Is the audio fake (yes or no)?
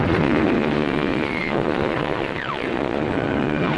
yes